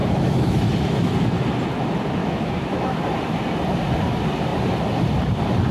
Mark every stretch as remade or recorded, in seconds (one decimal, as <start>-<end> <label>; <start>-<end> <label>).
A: 0.0-0.6 remade; 0.6-2.2 recorded; 2.2-3.0 remade; 3.0-5.7 recorded